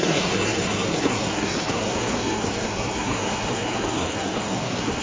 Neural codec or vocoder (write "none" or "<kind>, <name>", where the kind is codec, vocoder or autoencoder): codec, SNAC